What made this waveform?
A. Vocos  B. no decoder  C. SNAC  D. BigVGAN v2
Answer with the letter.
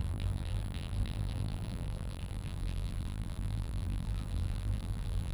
D